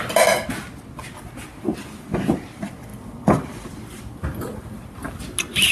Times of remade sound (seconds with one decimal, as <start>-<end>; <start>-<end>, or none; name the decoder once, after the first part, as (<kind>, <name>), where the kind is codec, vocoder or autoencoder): none